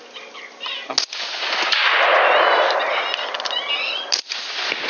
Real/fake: real